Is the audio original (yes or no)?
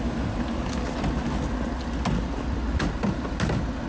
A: yes